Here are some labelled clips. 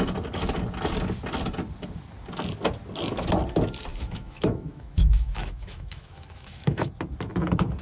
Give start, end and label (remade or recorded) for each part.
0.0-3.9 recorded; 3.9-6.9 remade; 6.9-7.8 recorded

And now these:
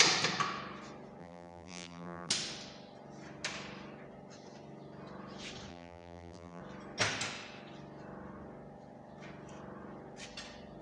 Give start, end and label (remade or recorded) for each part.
0.0-1.2 recorded; 1.2-2.3 remade; 2.3-5.7 recorded; 5.7-6.6 remade; 6.6-10.8 recorded

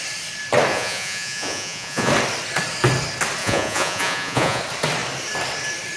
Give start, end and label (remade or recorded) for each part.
0.0-0.7 recorded; 0.7-2.1 remade; 2.1-3.4 recorded; 3.4-4.6 remade; 4.6-6.0 recorded

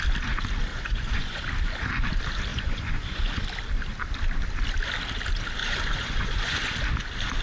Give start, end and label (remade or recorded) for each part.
0.0-0.7 recorded; 0.7-1.4 remade; 1.4-2.5 recorded; 2.5-3.4 remade; 3.4-5.6 recorded; 5.6-6.7 remade; 6.7-7.4 recorded